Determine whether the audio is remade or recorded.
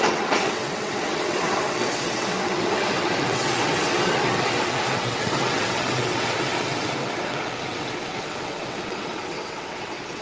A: remade